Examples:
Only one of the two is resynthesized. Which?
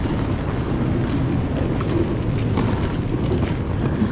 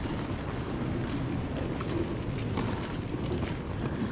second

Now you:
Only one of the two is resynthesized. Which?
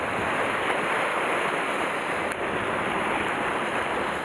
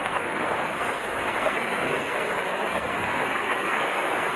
second